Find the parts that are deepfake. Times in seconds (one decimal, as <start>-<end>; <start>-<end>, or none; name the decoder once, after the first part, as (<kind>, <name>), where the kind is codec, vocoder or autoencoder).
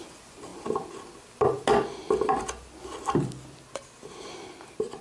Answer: none